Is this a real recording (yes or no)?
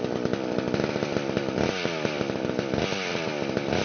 yes